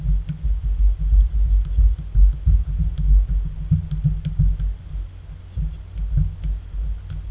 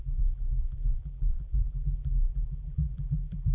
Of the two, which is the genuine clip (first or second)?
first